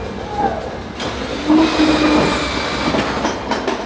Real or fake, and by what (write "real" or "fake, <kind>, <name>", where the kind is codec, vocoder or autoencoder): real